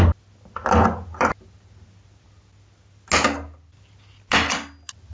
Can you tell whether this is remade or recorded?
recorded